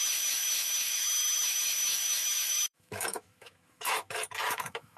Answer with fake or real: fake